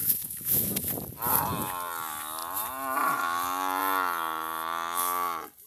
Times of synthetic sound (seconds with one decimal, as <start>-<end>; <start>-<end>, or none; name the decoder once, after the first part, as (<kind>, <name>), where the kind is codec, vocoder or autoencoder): 0.0-0.9 (autoencoder, DAC-VAE)